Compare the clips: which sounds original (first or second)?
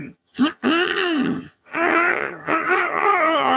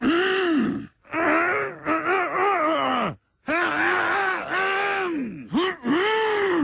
second